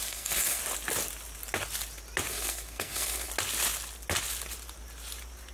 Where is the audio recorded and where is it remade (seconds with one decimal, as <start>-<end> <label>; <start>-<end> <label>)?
0.0-0.6 remade; 0.6-2.3 recorded; 2.3-3.3 remade; 3.3-5.5 recorded